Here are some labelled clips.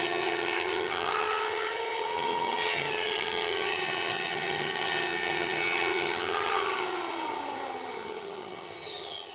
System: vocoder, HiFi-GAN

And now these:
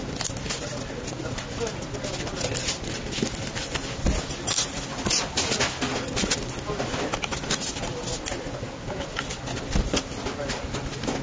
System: none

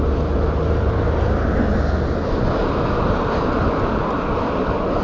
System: none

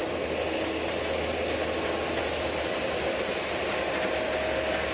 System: none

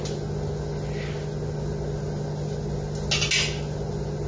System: none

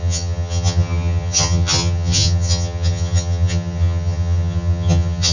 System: vocoder, HiFi-GAN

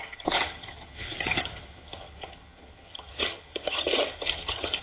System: vocoder, HiFi-GAN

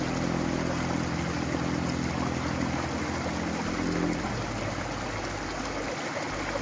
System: none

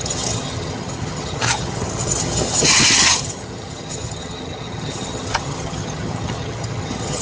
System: vocoder, HiFi-GAN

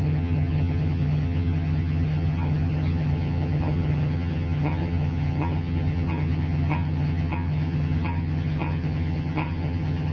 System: vocoder, HiFi-GAN